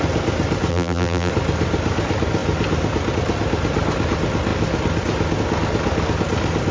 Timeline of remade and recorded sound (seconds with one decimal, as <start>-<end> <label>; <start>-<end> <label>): 0.0-0.7 recorded; 0.7-1.3 remade; 1.3-6.7 recorded